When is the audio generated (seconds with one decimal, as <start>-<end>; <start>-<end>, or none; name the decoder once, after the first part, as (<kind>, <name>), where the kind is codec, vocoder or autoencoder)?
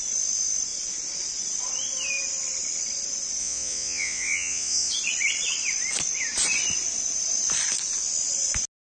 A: 3.4-4.9 (vocoder, Vocos)